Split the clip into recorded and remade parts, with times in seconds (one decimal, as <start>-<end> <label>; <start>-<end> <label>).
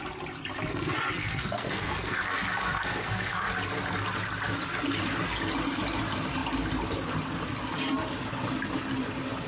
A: 0.0-0.7 recorded; 0.7-3.5 remade; 3.5-9.5 recorded